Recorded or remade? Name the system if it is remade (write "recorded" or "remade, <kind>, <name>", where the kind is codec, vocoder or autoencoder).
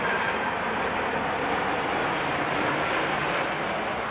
recorded